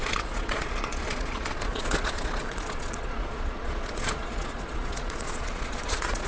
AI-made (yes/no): yes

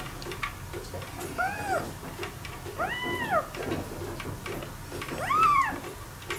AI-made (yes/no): no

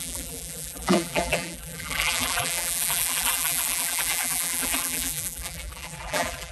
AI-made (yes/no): yes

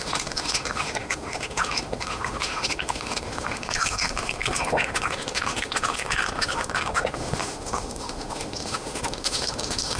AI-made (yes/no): yes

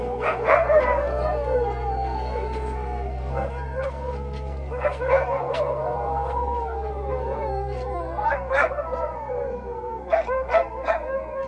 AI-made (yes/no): yes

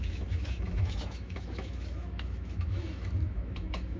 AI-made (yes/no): yes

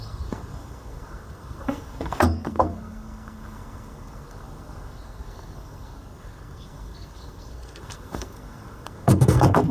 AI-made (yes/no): yes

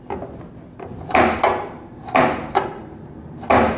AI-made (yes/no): no